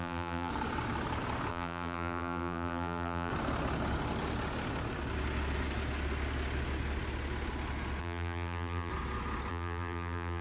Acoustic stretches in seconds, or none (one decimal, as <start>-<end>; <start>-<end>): 0.5-1.5; 3.3-8.0; 8.9-9.5

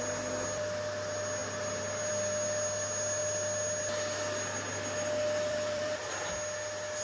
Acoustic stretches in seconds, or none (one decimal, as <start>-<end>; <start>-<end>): 0.0-5.5; 6.1-7.0

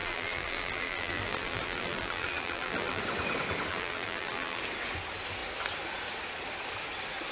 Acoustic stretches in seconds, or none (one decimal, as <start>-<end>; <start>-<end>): 3.0-3.7; 4.6-7.3